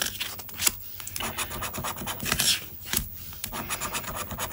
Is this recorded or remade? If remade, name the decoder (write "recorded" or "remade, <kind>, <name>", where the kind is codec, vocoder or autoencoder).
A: recorded